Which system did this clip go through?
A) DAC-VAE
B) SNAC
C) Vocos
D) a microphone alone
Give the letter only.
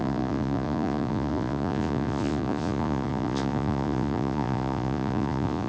C